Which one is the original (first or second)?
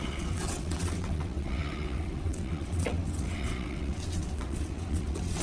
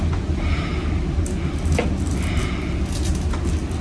second